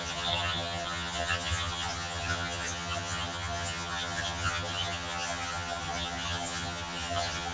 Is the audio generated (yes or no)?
yes